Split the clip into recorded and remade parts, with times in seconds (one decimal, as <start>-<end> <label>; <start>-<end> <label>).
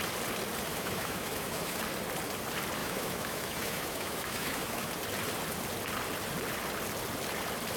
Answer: 0.0-0.7 recorded; 0.7-1.8 remade; 1.8-2.8 recorded; 2.8-4.9 remade; 4.9-7.8 recorded